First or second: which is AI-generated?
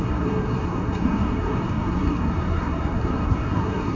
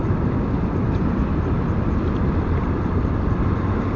first